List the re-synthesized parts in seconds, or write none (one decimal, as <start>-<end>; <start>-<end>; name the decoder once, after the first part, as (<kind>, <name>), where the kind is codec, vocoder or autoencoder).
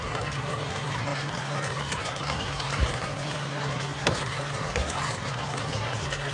0.0-6.3 (codec, SNAC)